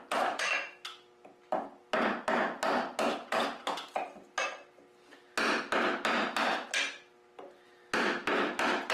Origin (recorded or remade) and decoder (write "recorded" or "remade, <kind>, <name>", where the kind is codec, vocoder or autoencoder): recorded